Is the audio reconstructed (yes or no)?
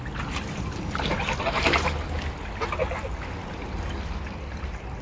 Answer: no